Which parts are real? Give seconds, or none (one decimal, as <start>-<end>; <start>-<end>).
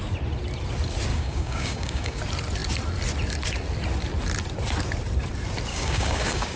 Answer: 0.0-1.1; 2.2-5.7